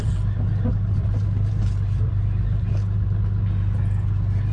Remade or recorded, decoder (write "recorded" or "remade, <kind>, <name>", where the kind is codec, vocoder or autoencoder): recorded